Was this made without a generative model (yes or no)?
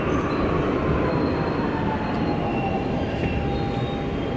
yes